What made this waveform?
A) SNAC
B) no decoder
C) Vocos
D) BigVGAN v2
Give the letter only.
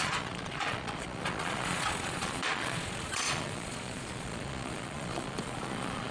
C